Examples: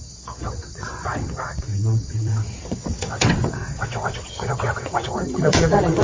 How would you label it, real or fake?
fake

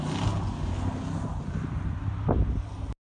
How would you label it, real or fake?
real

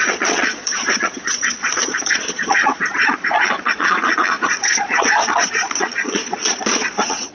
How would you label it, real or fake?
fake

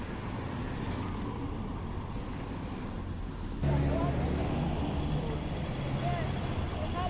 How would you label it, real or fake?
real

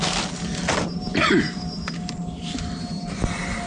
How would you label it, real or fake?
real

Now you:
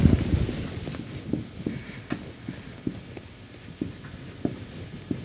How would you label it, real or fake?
real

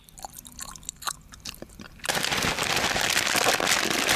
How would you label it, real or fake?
real